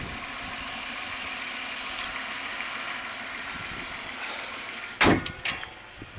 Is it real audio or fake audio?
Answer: fake